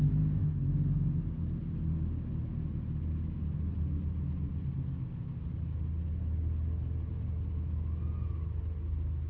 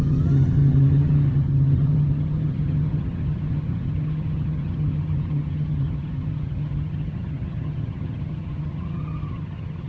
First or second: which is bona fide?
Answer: first